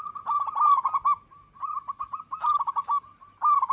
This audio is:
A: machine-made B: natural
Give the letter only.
B